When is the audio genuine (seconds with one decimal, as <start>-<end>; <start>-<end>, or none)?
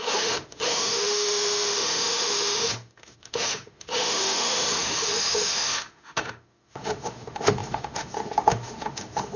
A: none